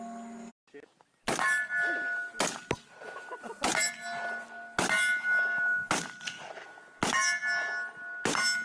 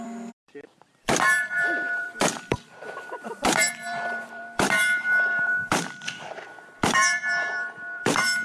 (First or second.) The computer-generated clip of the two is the second